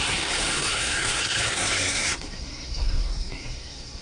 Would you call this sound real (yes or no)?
no